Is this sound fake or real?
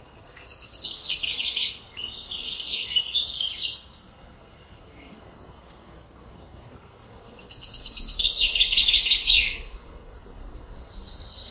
fake